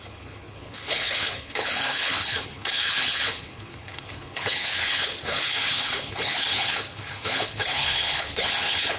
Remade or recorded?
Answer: remade